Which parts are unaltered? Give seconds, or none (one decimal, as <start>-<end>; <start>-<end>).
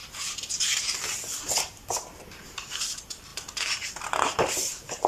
0.0-5.1